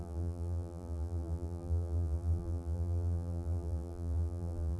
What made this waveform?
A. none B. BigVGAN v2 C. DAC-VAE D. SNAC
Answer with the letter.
B